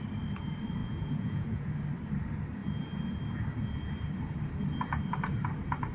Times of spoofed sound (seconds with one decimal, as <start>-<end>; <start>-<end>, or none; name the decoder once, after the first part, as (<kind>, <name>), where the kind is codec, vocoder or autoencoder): 0.8-1.7 (vocoder, Vocos)